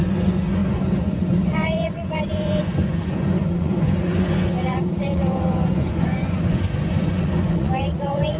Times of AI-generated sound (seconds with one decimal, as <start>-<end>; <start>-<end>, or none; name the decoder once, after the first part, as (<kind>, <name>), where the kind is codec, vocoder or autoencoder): 0.0-8.4 (vocoder, Vocos)